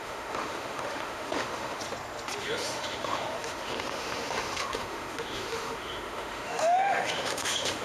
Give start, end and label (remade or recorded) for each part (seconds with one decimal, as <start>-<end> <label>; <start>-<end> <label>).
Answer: 0.0-1.8 remade; 1.8-2.4 recorded; 2.4-7.8 remade